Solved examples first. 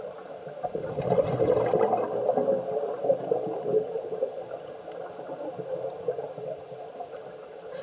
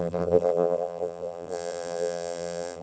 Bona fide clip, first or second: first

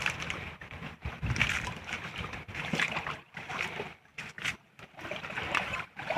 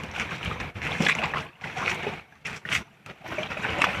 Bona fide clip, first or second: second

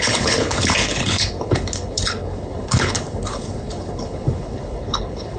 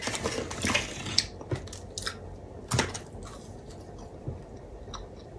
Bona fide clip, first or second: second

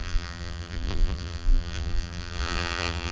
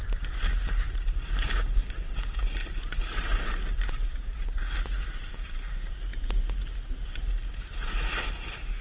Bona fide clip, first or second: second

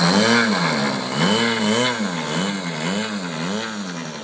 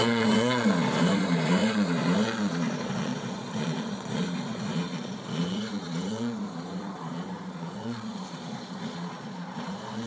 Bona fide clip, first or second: first